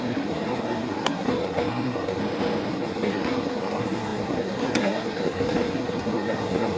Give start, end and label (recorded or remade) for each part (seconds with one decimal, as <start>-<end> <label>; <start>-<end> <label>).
0.0-2.2 remade; 2.2-2.7 recorded; 2.7-6.8 remade